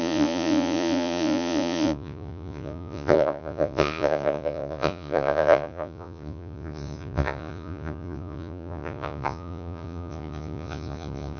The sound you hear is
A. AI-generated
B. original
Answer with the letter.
A